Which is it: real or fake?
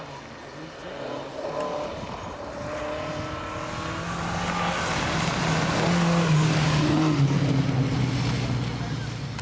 real